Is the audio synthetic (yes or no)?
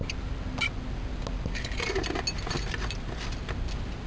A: no